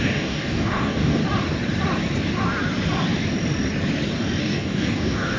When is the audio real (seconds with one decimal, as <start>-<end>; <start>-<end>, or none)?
1.2-4.4